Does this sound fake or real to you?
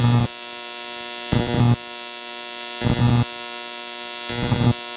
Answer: real